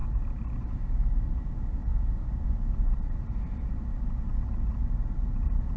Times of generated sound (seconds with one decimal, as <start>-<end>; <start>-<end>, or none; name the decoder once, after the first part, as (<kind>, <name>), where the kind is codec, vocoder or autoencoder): 1.9-5.8 (vocoder, BigVGAN v2)